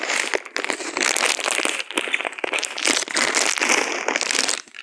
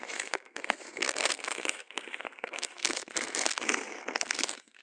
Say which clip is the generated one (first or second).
second